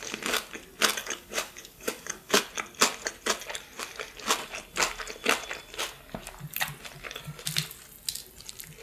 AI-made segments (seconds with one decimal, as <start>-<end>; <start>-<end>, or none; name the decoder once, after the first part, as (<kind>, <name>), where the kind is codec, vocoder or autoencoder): 1.0-2.4 (codec, DAC)